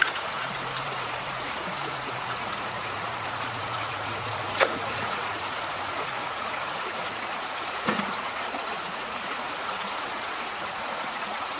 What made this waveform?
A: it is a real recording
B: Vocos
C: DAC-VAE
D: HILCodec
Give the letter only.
B